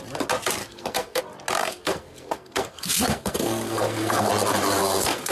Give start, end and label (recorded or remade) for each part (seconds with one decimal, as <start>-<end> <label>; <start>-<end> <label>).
0.0-0.6 recorded; 0.6-1.2 remade; 1.2-1.6 recorded; 1.6-4.3 remade; 4.3-4.8 recorded; 4.8-5.3 remade